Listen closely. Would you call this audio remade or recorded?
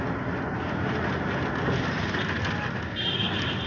recorded